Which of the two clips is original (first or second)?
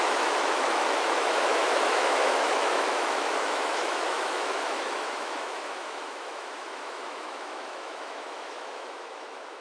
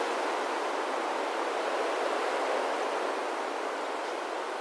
second